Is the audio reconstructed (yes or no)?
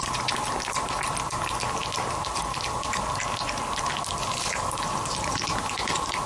no